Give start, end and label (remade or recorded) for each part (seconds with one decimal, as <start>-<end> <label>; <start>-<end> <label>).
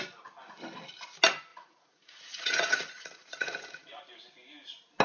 0.0-1.5 recorded; 1.5-4.0 remade; 4.0-5.0 recorded